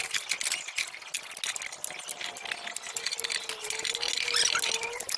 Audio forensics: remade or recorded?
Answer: recorded